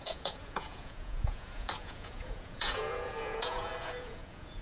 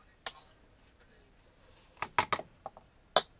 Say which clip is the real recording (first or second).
second